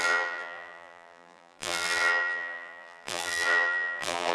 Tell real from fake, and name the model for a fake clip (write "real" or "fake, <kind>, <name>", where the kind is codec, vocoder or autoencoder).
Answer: fake, vocoder, BigVGAN v2